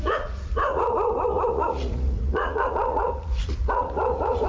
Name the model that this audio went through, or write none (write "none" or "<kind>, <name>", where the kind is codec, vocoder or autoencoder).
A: vocoder, Vocos